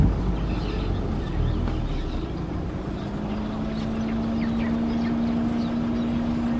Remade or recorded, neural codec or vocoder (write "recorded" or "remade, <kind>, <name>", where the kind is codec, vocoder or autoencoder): recorded